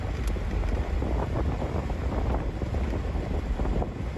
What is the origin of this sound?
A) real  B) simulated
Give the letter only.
A